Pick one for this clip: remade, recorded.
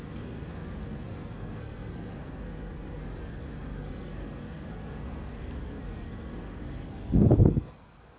remade